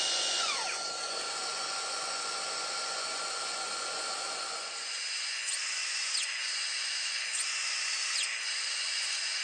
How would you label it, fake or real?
fake